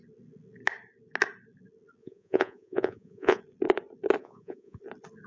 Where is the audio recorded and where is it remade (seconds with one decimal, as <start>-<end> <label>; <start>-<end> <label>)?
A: 0.0-2.0 recorded; 2.0-3.4 remade; 3.4-4.2 recorded; 4.2-4.8 remade; 4.8-5.3 recorded